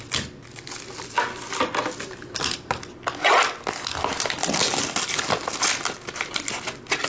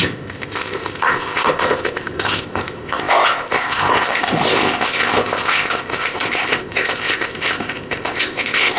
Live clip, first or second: first